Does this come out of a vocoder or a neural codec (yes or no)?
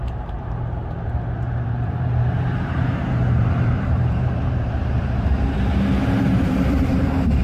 yes